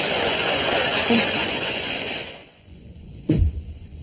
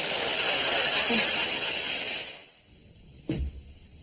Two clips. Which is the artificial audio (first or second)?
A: first